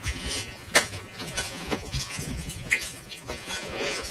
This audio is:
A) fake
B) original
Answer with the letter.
A